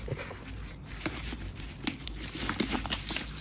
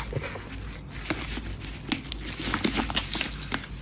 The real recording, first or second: second